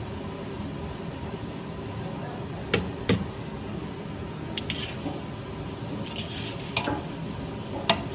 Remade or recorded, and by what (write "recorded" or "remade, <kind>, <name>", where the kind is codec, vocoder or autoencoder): recorded